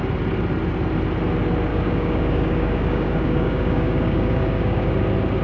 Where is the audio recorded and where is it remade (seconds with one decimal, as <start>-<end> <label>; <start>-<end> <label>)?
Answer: 0.0-1.7 recorded; 1.7-4.9 remade; 4.9-5.4 recorded